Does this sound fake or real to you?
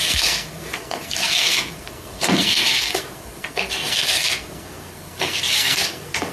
fake